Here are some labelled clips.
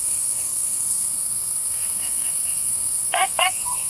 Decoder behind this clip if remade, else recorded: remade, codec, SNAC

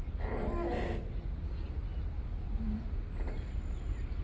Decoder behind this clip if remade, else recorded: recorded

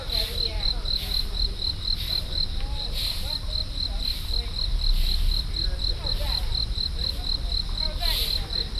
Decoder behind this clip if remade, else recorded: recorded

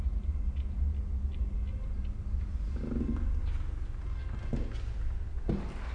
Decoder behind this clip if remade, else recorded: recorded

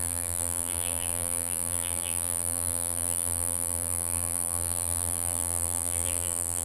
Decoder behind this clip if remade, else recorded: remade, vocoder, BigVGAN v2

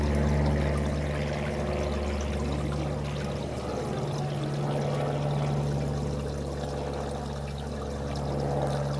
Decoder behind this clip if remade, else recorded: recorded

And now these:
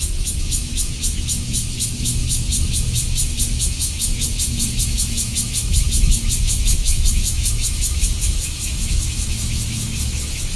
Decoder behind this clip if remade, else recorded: remade, autoencoder, DAC-VAE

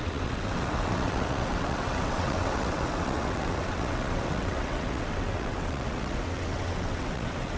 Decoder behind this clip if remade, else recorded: remade, vocoder, WaveNeXt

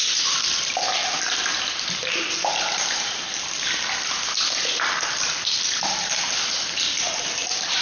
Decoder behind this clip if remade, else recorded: remade, vocoder, BigVGAN v2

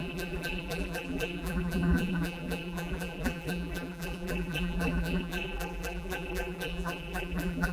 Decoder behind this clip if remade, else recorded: remade, vocoder, BigVGAN v2